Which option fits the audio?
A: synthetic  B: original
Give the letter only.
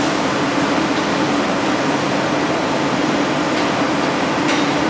B